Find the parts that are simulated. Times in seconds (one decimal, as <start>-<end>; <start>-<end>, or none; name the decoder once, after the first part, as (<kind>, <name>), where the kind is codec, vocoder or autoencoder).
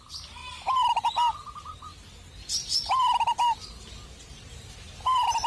0.0-0.4 (vocoder, BigVGAN v2); 1.4-2.6; 4.3-5.5